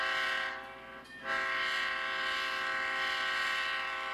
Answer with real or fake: real